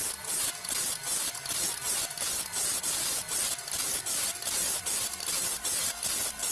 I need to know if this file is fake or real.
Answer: real